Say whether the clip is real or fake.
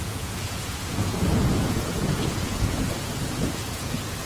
fake